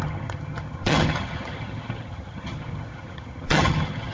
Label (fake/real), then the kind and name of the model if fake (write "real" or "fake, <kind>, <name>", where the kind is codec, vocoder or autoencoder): fake, vocoder, HiFi-GAN